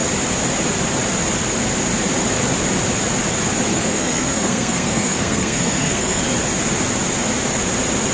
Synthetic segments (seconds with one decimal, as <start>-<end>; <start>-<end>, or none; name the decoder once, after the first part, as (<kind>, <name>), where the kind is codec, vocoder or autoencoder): 3.7-6.2 (codec, SNAC)